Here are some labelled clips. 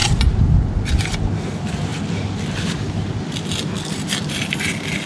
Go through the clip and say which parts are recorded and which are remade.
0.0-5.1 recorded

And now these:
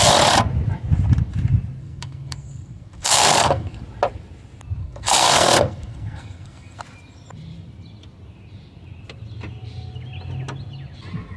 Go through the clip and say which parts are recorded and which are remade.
0.0-1.8 recorded; 1.8-3.8 remade; 3.8-4.8 recorded; 4.8-6.8 remade; 6.8-11.4 recorded

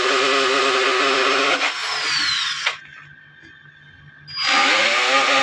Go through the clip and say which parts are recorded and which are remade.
0.0-5.4 recorded

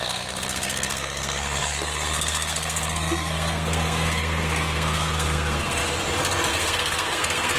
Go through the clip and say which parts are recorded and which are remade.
0.0-5.8 remade; 5.8-6.5 recorded; 6.5-7.6 remade

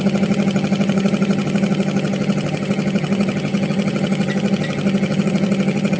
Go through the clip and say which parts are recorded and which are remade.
0.0-6.0 remade

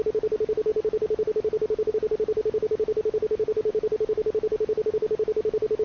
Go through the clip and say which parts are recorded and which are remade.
0.0-5.8 recorded